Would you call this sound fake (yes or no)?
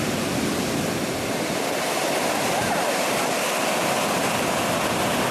no